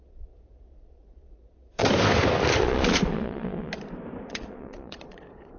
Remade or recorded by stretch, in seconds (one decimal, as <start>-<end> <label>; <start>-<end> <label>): 0.0-1.8 remade; 1.8-2.6 recorded; 2.6-3.7 remade; 3.7-4.3 recorded; 4.3-5.6 remade